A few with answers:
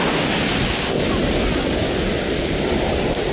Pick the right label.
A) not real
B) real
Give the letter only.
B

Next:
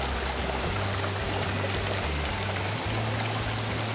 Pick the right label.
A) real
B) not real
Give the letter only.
A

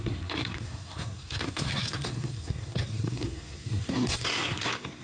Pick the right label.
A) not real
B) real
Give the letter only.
A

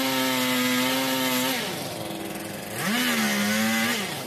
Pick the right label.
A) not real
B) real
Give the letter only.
B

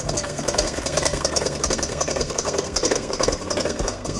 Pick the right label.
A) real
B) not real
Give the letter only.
B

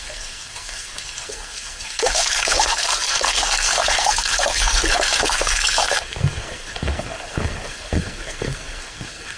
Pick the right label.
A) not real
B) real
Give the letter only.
A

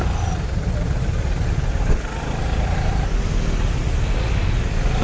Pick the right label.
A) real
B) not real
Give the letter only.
A